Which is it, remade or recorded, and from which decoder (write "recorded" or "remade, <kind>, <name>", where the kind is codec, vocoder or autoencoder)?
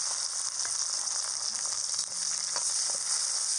recorded